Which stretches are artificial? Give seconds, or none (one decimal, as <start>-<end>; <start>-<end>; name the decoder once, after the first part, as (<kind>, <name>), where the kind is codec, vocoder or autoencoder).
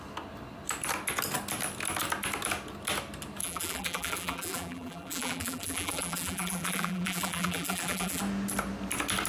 3.4-8.2 (vocoder, BigVGAN v2)